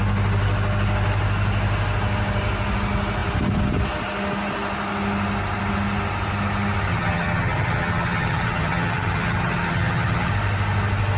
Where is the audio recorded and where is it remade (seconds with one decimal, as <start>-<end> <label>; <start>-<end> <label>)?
0.0-6.9 recorded; 6.9-10.3 remade; 10.3-11.2 recorded